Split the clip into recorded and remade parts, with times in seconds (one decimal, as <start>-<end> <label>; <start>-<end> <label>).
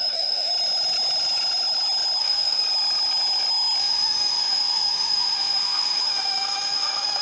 0.0-0.5 remade; 0.5-2.2 recorded; 2.2-2.6 remade; 2.6-3.8 recorded; 3.8-7.2 remade